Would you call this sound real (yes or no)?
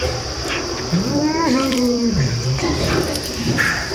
no